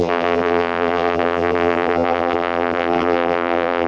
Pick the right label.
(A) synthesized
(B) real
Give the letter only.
A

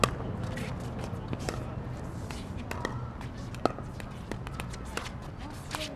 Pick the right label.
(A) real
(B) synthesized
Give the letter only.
A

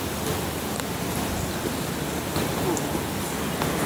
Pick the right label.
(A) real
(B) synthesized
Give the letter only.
A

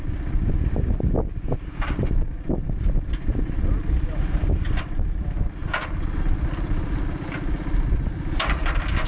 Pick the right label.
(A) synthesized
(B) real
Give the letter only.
B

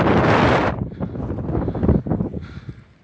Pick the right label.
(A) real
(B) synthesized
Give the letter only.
A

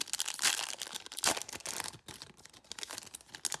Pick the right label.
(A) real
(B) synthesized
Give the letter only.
A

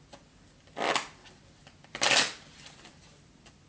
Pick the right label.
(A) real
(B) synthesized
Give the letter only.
A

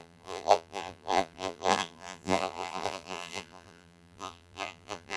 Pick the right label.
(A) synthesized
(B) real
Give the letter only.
A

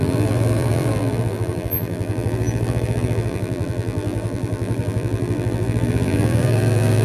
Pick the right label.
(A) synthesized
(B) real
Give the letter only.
A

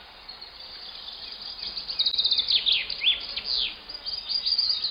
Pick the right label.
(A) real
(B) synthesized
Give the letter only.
A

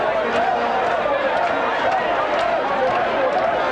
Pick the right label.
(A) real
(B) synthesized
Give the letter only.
A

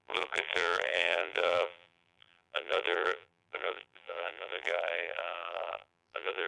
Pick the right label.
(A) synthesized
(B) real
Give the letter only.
A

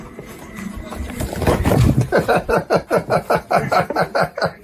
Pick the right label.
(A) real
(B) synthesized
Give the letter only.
B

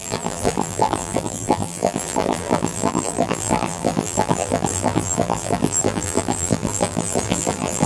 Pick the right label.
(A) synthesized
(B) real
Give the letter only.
A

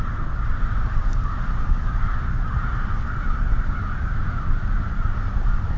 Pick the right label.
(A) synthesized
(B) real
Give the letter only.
B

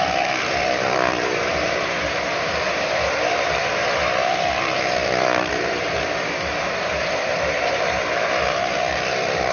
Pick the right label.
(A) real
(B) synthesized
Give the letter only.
B